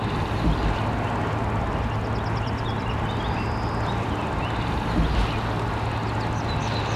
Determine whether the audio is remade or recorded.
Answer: recorded